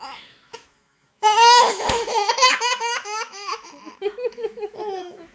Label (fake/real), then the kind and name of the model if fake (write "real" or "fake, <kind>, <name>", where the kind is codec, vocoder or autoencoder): fake, autoencoder, DAC-VAE